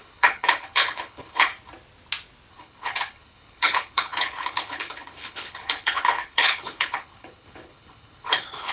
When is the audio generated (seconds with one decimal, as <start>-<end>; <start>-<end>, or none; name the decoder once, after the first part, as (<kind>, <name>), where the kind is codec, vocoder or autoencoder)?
0.0-1.5 (codec, HILCodec); 2.5-8.7

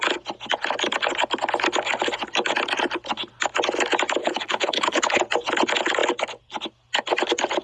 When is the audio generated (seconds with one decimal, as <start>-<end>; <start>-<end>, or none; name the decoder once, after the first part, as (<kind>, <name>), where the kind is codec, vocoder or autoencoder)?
4.2-5.2 (codec, HILCodec)

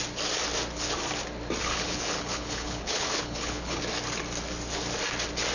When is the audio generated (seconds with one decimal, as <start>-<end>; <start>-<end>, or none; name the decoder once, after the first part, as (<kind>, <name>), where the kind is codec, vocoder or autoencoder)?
1.6-3.8 (codec, HILCodec)

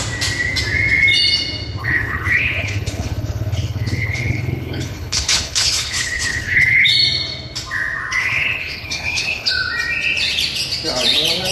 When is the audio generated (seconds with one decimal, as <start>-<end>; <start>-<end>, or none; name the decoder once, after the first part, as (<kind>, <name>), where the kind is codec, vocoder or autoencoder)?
1.8-6.9 (codec, HILCodec); 8.2-9.5

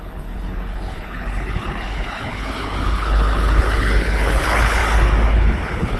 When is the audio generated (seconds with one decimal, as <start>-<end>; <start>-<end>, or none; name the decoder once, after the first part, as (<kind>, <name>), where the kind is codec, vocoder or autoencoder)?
0.0-4.8 (codec, HILCodec); 5.3-6.0